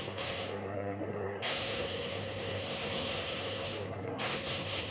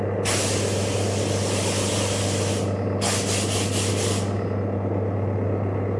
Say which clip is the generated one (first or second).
first